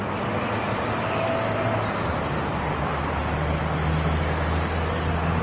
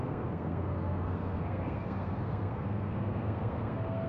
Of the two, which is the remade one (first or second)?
second